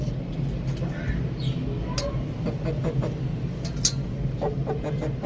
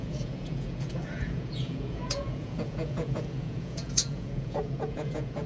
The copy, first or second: second